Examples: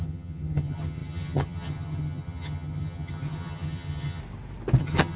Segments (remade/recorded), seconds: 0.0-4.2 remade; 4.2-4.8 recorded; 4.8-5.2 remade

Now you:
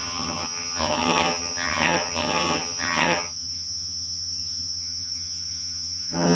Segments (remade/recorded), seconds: 0.0-6.3 remade

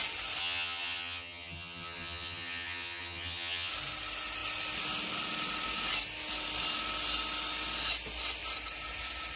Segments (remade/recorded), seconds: 0.0-0.4 recorded; 0.4-3.7 remade; 3.7-9.4 recorded